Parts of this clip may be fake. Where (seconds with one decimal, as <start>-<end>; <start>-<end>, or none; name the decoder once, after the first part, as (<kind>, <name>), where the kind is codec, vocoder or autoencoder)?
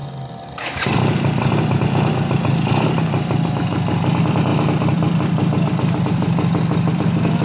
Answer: none